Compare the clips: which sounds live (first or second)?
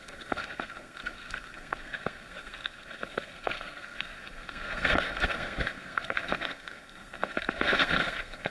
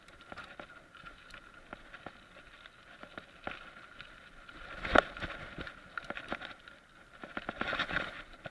second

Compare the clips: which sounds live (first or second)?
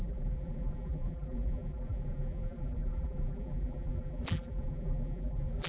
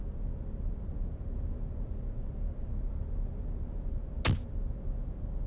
second